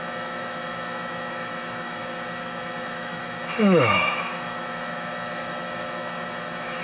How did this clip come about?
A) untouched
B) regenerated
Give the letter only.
B